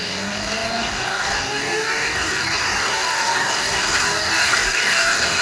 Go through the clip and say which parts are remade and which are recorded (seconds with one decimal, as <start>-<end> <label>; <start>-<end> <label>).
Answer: 0.0-5.4 remade